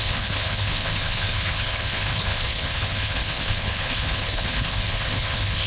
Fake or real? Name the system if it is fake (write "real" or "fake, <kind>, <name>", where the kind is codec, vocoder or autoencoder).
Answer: fake, codec, HILCodec